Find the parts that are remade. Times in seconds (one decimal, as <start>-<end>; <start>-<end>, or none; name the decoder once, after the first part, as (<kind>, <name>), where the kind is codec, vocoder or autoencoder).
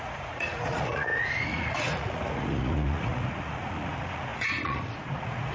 0.0-5.5 (vocoder, Vocos)